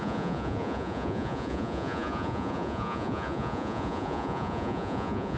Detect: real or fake fake